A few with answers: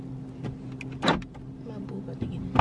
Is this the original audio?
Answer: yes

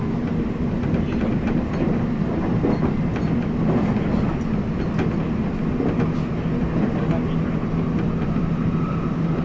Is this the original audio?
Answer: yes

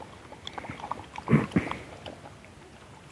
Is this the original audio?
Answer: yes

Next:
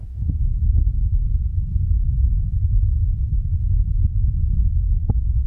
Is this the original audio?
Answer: no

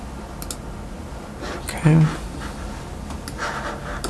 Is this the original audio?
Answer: yes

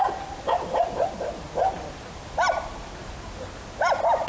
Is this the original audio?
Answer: yes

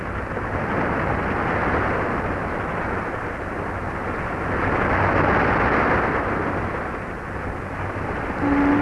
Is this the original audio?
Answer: yes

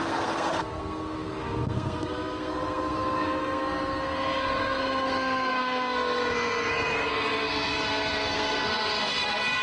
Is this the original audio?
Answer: no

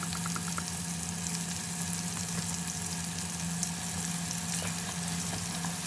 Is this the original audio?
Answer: yes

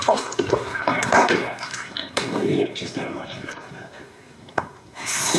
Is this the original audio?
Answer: no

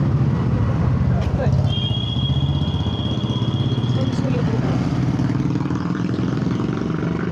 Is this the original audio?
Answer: yes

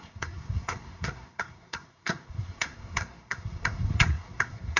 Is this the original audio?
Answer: no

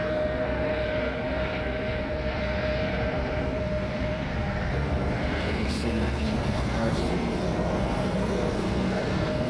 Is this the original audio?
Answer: no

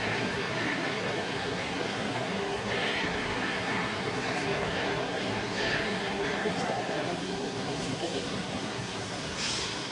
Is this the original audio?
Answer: no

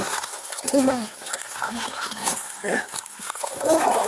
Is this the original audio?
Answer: no